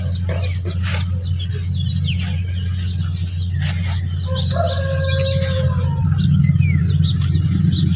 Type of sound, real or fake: real